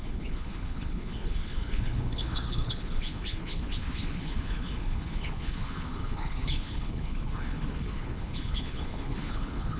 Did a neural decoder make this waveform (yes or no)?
yes